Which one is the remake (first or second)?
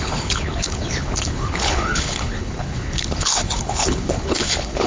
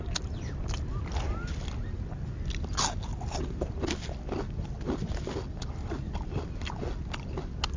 first